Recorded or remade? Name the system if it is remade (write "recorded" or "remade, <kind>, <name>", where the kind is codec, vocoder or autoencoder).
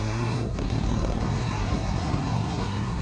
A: remade, codec, SNAC